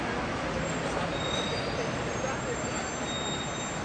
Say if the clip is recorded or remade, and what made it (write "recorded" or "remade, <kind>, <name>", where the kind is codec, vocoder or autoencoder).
recorded